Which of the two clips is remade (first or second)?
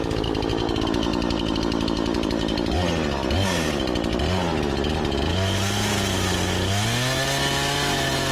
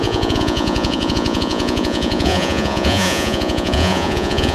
second